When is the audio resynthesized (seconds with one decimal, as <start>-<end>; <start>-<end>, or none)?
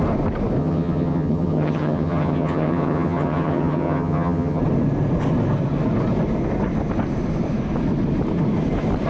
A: 0.6-4.6